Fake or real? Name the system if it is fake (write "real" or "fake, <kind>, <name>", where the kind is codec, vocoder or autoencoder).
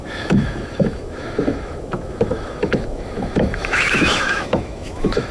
fake, autoencoder, DAC-VAE